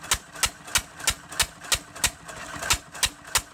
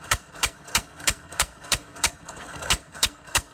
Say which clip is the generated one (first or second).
second